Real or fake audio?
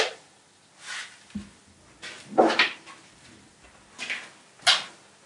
real